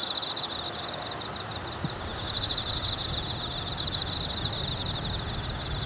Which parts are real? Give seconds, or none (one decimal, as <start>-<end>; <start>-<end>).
0.0-5.9